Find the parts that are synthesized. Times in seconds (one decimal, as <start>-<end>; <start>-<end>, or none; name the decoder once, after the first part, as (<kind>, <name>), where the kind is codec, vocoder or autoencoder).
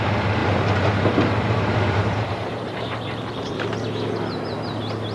0.4-3.5 (vocoder, BigVGAN v2)